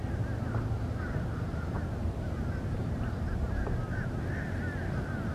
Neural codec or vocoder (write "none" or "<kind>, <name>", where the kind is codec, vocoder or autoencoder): none